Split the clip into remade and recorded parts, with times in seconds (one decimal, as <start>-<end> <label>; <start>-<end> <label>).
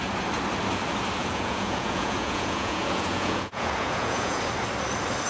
0.0-1.2 recorded; 1.2-4.4 remade; 4.4-5.3 recorded